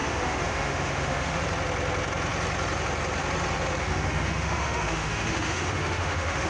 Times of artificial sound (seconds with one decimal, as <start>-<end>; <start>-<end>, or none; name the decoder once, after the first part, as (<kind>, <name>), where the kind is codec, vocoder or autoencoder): 0.0-1.4 (autoencoder, DAC-VAE); 3.8-6.5